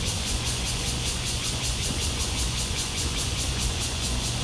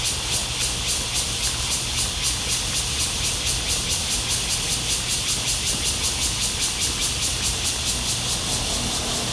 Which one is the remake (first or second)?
first